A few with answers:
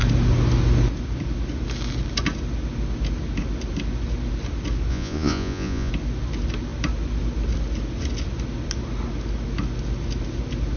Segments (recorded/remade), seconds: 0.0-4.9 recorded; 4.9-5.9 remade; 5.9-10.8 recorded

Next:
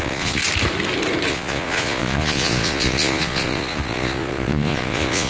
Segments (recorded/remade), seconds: 0.0-0.4 remade; 0.4-1.3 recorded; 1.3-5.3 remade

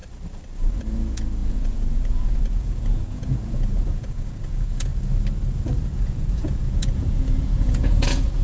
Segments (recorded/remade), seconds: 0.0-0.8 recorded; 0.8-4.9 remade; 4.9-5.9 recorded; 5.9-8.4 remade

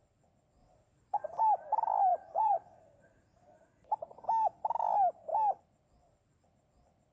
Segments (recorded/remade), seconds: 0.0-0.6 recorded; 0.6-1.4 remade; 1.4-2.1 recorded; 2.1-3.9 remade; 3.9-7.1 recorded

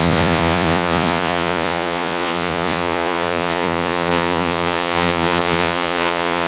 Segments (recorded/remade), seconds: 0.0-6.5 remade